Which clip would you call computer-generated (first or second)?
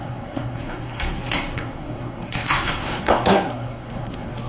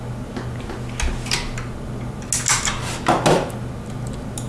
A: first